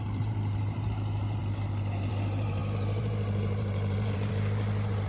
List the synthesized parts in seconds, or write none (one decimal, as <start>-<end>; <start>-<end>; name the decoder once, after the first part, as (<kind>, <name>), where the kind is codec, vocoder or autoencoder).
0.0-1.4 (vocoder, BigVGAN v2); 2.1-5.1